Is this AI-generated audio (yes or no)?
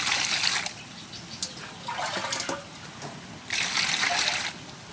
no